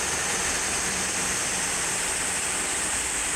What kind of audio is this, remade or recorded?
remade